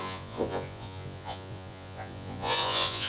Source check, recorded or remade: remade